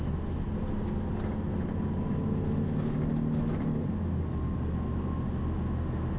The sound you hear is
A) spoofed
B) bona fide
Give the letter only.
B